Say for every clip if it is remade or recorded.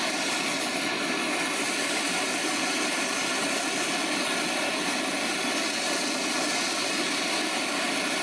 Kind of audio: recorded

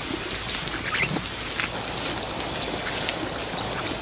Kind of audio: recorded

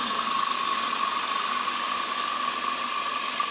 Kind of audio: recorded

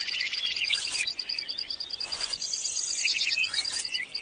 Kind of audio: remade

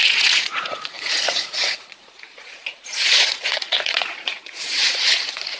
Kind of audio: remade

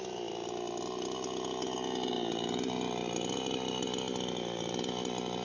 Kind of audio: recorded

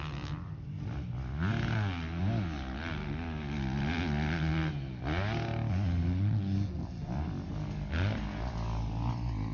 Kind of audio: recorded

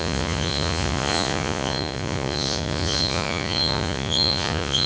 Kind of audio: remade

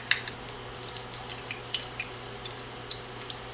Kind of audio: recorded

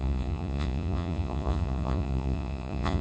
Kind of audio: remade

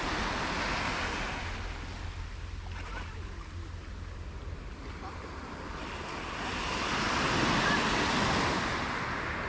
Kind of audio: recorded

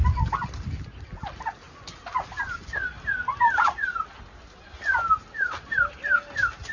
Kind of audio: recorded